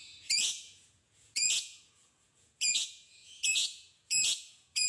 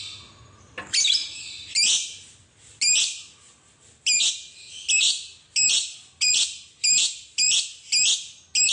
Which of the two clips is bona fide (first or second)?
second